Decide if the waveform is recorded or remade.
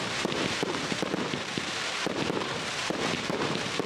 remade